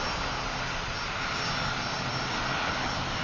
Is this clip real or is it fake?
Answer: real